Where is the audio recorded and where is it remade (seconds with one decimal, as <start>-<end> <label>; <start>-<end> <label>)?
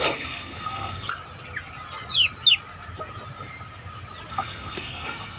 0.0-1.1 remade; 1.1-4.3 recorded; 4.3-5.4 remade